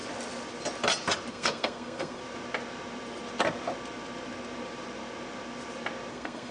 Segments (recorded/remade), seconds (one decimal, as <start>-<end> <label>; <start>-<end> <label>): 0.0-1.3 recorded; 1.3-2.2 remade; 2.2-6.1 recorded; 6.1-6.5 remade